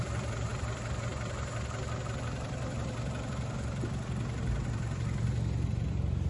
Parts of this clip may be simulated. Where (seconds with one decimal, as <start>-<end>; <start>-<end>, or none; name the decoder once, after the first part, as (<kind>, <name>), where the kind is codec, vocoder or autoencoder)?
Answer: none